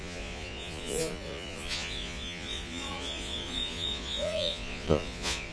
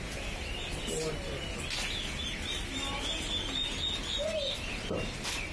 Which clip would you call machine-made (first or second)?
first